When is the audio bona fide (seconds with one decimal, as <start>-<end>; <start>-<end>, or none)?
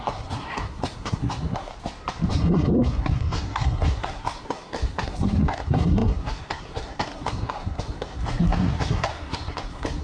1.7-2.3